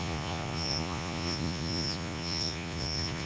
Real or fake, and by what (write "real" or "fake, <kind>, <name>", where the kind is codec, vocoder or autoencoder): fake, vocoder, Vocos